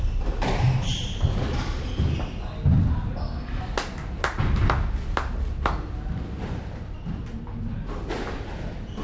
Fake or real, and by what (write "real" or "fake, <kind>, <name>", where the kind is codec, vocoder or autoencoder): real